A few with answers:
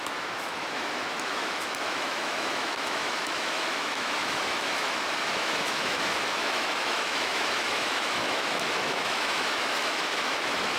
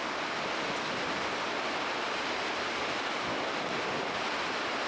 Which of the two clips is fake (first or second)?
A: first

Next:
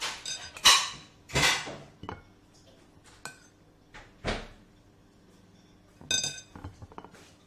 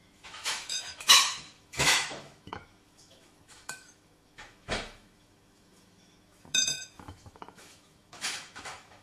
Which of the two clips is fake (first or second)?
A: second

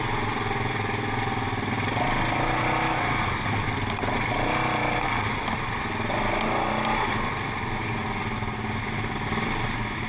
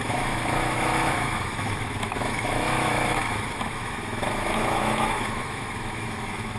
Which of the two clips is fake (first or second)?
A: second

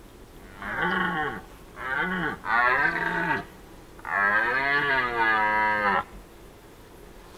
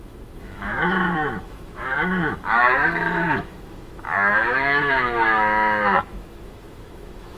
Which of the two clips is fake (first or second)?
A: second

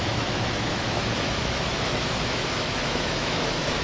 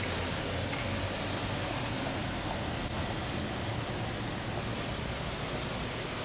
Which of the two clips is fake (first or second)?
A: first